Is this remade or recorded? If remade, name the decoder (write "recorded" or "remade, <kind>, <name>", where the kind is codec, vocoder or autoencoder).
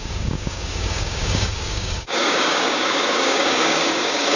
remade, codec, DAC